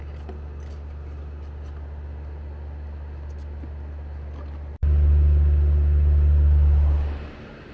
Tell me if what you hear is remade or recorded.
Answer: recorded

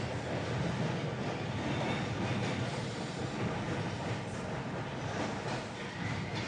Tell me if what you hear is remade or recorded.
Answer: recorded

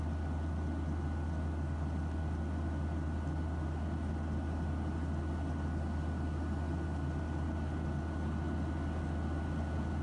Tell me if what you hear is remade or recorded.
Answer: recorded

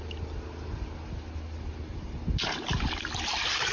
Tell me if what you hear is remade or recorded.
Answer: recorded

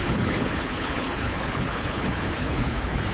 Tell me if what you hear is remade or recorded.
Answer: remade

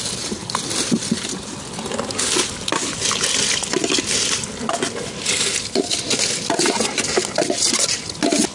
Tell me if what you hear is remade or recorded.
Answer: recorded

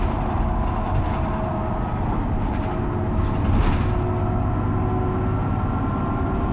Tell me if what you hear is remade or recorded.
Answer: recorded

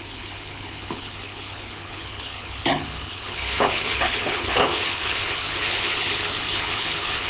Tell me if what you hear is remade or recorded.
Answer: remade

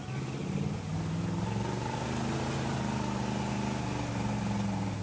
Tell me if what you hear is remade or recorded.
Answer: recorded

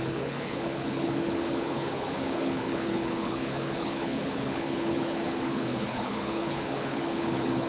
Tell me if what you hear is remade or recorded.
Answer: remade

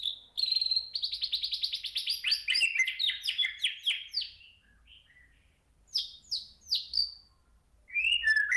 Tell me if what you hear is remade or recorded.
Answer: recorded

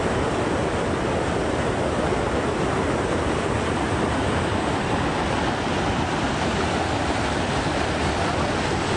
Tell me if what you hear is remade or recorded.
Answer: recorded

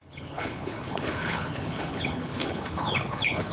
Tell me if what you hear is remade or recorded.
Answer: remade